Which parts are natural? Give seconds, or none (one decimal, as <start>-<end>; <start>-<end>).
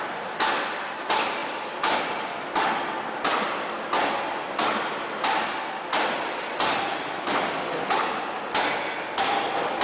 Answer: 0.0-6.9; 7.4-9.8